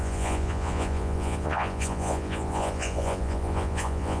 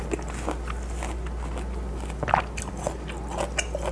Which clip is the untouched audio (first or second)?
second